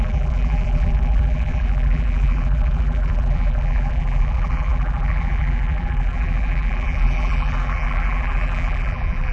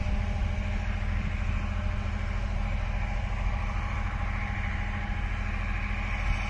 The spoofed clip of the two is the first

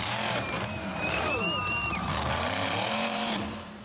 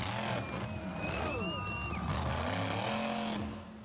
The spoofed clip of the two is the first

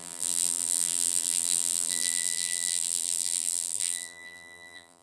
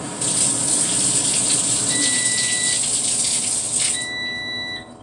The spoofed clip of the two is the first